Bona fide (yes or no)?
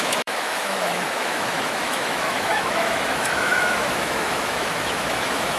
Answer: no